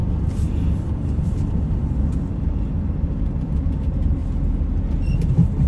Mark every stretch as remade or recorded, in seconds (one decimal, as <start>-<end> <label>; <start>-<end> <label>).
0.0-5.7 recorded